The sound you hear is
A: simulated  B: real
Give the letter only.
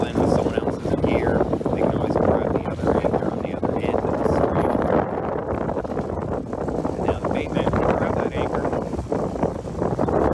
B